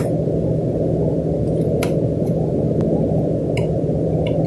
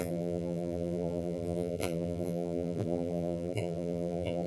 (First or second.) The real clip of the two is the first